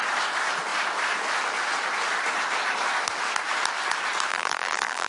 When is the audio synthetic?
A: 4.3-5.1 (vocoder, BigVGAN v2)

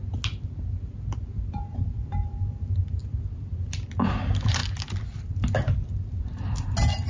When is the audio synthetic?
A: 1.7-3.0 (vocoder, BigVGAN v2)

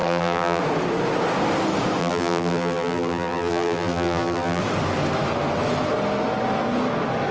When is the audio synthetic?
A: 0.0-0.6 (vocoder, BigVGAN v2); 2.0-4.6